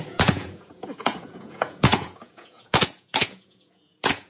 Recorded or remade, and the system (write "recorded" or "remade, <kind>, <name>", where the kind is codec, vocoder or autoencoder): remade, vocoder, Vocos